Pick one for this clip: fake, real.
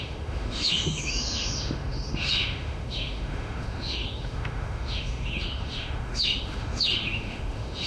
fake